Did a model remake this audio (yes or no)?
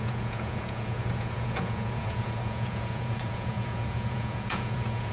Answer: yes